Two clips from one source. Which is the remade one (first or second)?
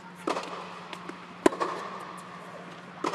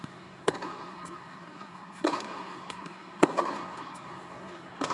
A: second